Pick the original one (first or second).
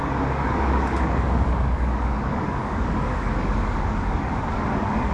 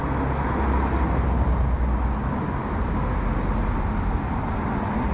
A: second